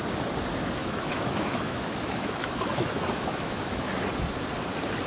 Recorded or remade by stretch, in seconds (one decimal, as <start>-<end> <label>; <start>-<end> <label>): 0.0-0.8 recorded; 0.8-3.9 remade; 3.9-5.1 recorded